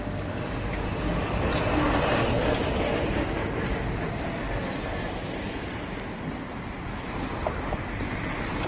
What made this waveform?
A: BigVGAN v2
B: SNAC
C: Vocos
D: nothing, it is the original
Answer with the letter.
D